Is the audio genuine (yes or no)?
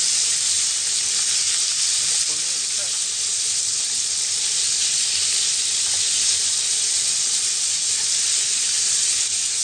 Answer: no